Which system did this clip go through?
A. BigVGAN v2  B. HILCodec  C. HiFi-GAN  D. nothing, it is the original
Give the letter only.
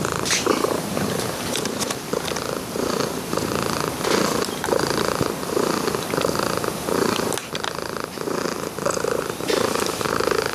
A